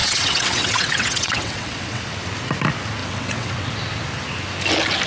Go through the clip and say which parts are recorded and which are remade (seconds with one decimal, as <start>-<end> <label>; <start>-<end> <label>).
0.0-2.0 remade; 2.0-3.0 recorded; 3.0-3.7 remade; 3.7-5.1 recorded